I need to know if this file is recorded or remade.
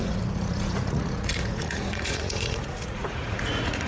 remade